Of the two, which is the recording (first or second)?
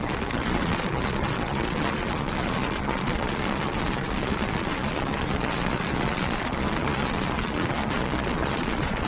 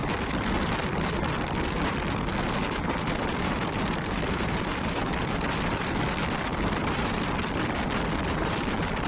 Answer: second